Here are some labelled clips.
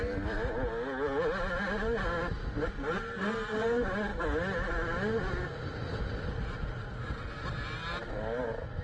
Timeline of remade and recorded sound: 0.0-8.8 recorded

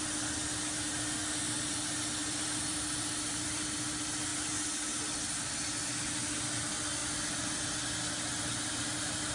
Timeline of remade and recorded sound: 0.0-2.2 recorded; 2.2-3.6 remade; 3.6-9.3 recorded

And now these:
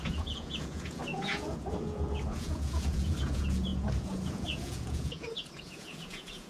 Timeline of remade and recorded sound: 0.0-6.5 remade